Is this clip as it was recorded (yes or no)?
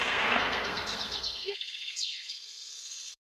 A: no